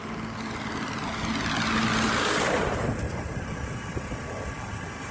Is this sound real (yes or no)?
yes